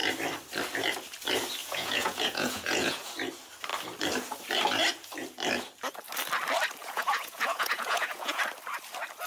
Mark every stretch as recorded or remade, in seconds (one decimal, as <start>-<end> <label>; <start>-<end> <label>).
0.0-1.6 recorded; 1.6-3.1 remade; 3.1-6.8 recorded; 6.8-8.4 remade; 8.4-9.3 recorded